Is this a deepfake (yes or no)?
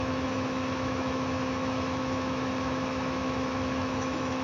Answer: yes